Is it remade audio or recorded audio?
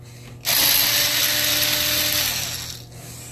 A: recorded